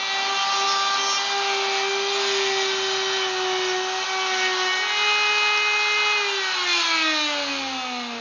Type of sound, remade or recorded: recorded